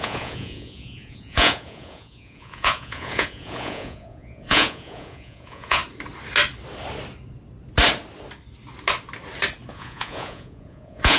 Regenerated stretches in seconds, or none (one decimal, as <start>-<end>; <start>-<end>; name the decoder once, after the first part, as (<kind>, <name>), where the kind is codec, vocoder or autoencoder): 0.0-5.8 (vocoder, Vocos); 9.7-11.2